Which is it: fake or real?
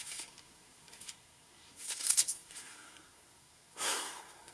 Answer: fake